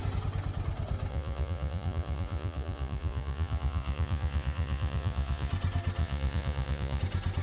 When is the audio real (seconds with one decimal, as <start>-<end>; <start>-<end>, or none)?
0.0-1.1; 5.5-6.0; 7.0-7.4